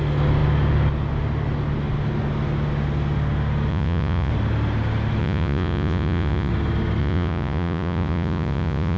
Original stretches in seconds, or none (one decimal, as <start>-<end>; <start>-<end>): 0.0-3.7; 4.3-5.2; 6.5-7.0